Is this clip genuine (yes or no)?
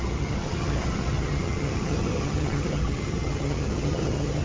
no